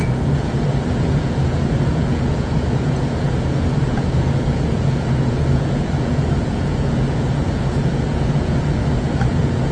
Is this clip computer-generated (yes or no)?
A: yes